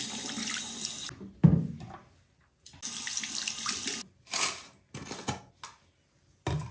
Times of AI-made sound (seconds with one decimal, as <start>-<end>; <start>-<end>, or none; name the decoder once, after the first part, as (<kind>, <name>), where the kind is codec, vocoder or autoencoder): none

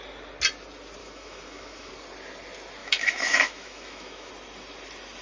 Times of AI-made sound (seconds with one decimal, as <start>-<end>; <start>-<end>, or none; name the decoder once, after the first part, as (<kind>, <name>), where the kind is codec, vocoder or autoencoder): 1.0-1.9 (autoencoder, DAC-VAE); 2.8-4.3

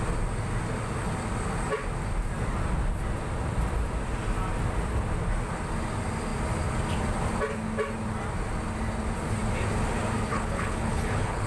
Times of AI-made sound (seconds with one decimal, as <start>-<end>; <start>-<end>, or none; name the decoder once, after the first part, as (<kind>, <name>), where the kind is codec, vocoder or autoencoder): 10.3-11.5 (codec, HILCodec)

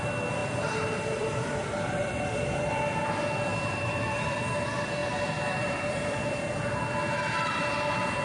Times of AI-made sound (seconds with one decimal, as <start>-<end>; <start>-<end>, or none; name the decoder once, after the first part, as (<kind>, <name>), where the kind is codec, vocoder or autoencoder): 0.4-2.7 (vocoder, BigVGAN v2); 3.5-4.4; 5.0-6.5

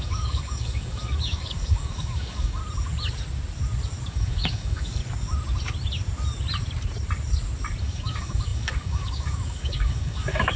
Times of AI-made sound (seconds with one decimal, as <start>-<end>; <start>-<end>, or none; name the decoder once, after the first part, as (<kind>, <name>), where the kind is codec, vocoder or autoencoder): 0.0-2.6 (codec, DAC); 4.1-5.0; 7.8-10.6

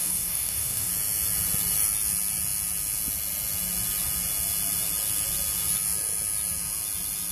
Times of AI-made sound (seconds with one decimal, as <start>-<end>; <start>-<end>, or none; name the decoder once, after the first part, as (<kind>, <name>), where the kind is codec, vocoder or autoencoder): 0.0-0.9 (codec, DAC)